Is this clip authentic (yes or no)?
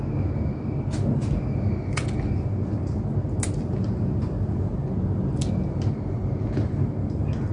yes